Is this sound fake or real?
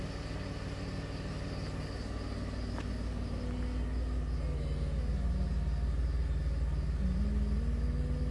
real